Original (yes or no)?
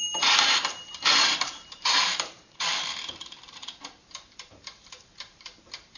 no